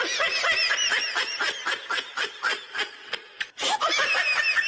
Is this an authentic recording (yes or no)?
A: yes